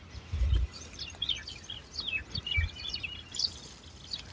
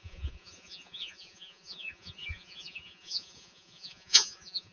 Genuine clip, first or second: first